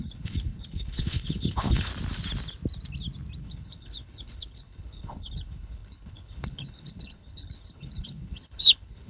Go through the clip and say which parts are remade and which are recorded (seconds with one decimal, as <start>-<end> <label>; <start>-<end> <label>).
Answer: 0.0-1.9 remade; 1.9-3.4 recorded; 3.4-9.1 remade